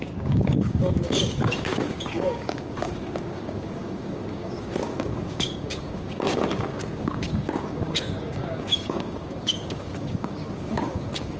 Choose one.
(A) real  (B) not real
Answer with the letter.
B